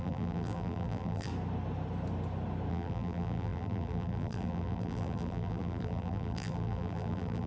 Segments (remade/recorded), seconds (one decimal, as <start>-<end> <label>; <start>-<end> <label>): 0.0-1.3 remade; 1.3-2.7 recorded; 2.7-7.5 remade